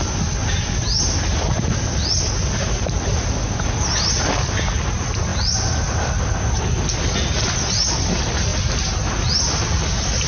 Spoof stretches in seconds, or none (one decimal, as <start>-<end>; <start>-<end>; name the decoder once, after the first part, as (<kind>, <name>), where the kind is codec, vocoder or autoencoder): none

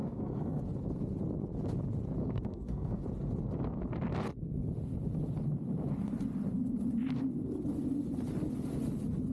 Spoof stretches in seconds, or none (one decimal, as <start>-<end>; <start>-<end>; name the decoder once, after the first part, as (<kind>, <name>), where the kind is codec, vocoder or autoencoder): 0.0-0.6 (codec, SNAC); 2.2-3.0

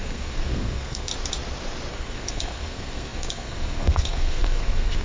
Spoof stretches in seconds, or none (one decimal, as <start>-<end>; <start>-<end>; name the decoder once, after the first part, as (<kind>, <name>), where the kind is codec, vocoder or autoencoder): 0.0-1.1 (codec, SNAC); 1.9-5.0

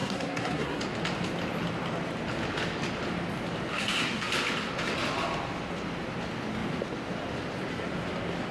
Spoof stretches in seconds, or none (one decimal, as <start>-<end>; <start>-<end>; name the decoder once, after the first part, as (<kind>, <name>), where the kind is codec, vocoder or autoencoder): 0.0-0.8 (codec, SNAC); 3.7-4.3

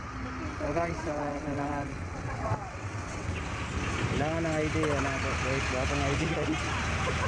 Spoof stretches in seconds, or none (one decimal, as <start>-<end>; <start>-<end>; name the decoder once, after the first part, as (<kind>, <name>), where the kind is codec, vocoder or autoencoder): 0.5-3.4 (vocoder, WaveNeXt)